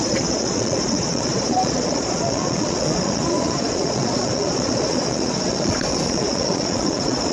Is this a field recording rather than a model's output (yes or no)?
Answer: no